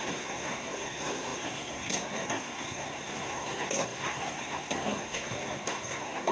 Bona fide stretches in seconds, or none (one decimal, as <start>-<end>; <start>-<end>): none